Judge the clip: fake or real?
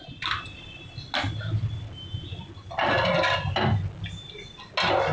real